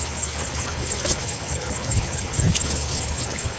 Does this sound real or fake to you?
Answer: fake